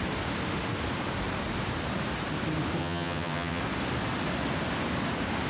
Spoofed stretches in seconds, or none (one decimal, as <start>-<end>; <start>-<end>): 2.8-3.6

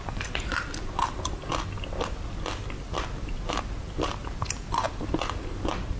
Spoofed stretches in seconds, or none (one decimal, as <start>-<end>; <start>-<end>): none